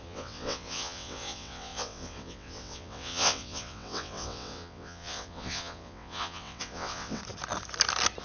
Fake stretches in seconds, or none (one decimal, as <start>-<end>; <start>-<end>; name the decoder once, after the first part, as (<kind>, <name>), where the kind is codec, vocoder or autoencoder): 0.0-7.2 (vocoder, WaveNeXt)